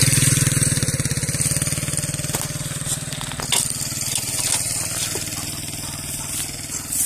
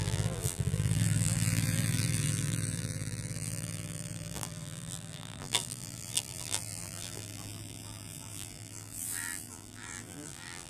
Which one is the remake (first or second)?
second